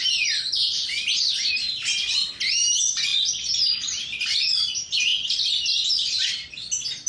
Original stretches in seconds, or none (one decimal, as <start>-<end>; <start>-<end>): 0.0-7.1